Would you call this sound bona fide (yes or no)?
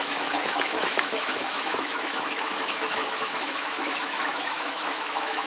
no